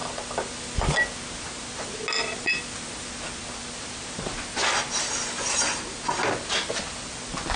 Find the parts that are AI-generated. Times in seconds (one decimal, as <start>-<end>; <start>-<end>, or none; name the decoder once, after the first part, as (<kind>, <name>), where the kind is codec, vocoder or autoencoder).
none